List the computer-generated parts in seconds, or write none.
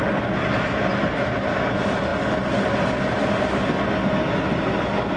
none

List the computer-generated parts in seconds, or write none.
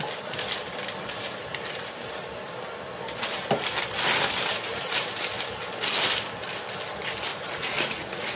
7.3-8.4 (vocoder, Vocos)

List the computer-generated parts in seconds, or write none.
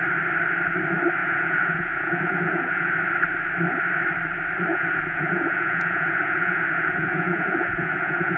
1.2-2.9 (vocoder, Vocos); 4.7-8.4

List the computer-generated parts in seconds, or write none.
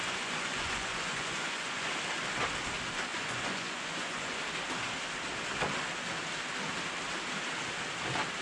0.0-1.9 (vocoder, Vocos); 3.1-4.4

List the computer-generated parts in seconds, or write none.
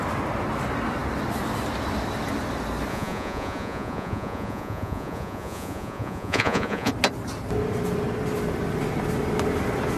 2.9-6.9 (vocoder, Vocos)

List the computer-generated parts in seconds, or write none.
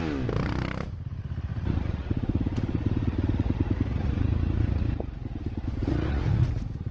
1.5-4.8 (vocoder, Vocos); 5.8-6.9